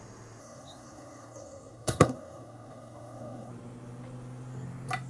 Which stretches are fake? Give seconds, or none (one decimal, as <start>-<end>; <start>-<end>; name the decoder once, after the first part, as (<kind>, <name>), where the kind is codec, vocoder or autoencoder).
0.4-3.5 (codec, SNAC)